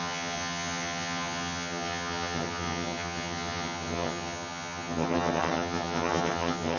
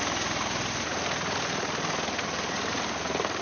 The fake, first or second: first